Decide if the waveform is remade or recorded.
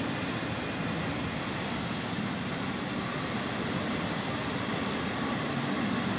recorded